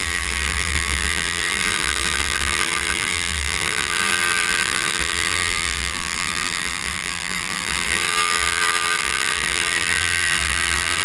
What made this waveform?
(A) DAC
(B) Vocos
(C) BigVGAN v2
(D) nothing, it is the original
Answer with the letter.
C